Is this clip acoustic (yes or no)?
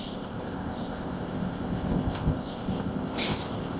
no